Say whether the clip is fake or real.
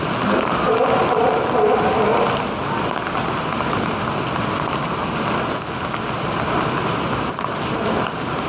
real